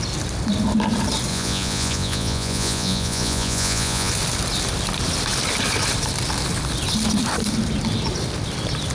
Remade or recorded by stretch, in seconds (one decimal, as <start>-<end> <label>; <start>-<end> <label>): 0.0-1.3 recorded; 1.3-4.1 remade; 4.1-8.9 recorded